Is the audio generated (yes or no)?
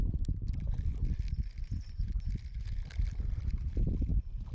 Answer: no